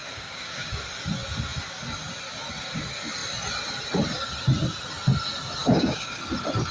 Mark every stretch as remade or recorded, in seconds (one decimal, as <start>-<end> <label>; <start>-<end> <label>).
0.0-0.8 remade; 0.8-5.6 recorded; 5.6-6.2 remade; 6.2-6.7 recorded